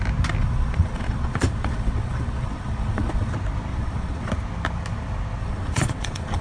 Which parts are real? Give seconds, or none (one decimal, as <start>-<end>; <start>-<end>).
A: 0.0-0.4; 3.3-3.7; 4.3-5.4